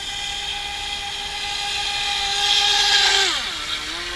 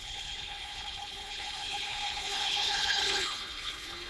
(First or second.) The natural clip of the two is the first